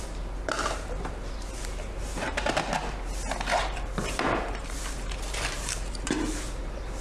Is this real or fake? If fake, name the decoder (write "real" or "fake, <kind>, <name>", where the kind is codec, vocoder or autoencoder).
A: fake, vocoder, BigVGAN v2